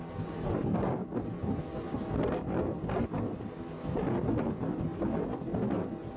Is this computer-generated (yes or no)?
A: no